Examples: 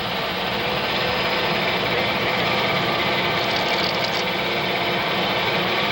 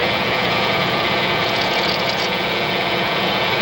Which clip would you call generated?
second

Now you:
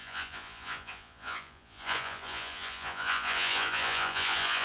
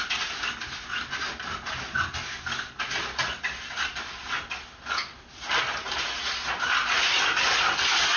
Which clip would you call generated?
first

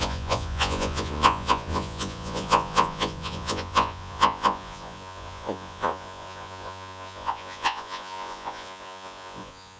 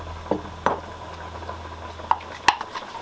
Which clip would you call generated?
first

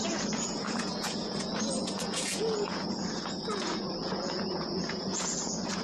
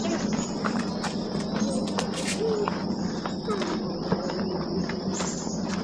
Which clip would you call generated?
first